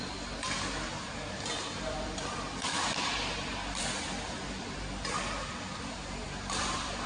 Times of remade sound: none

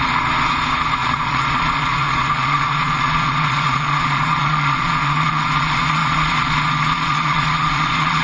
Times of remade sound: 0.0-8.2 (vocoder, Vocos)